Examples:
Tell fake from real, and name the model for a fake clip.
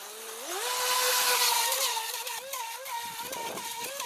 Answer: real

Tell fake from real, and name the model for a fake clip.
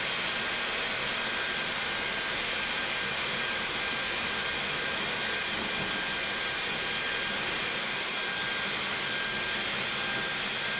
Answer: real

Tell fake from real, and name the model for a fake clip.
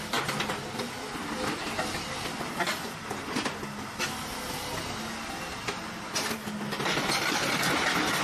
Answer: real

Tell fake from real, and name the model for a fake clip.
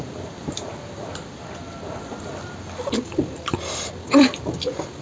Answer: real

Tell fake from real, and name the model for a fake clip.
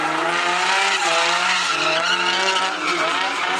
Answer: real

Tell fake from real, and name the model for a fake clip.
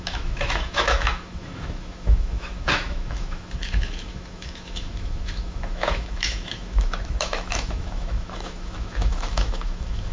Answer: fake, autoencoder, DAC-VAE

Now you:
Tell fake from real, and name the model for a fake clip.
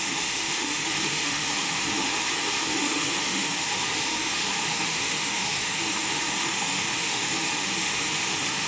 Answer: fake, autoencoder, DAC-VAE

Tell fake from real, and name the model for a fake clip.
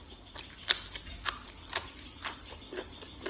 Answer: real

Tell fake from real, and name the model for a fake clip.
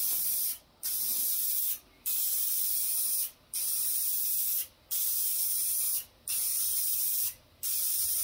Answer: real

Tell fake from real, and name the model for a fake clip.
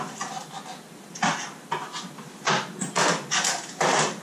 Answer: real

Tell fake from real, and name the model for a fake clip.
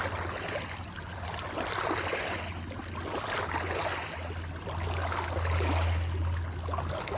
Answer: real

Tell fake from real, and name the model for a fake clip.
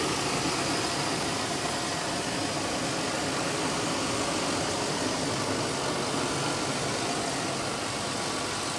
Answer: real